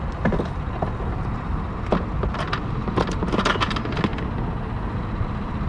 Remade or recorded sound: recorded